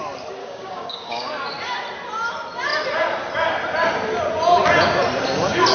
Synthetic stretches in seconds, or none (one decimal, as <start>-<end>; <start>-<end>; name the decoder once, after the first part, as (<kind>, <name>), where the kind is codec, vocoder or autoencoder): 0.4-1.3 (codec, DAC)